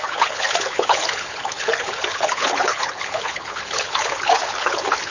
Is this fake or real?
fake